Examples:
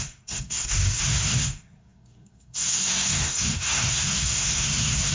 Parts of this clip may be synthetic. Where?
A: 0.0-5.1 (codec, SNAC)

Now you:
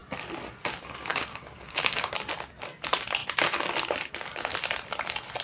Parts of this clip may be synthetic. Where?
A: 1.1-2.1 (codec, DAC)